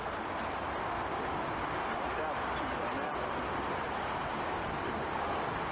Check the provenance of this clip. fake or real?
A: real